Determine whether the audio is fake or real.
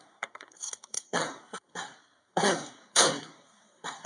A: fake